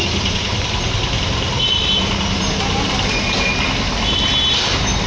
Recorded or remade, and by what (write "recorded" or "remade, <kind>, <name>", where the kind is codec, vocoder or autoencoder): recorded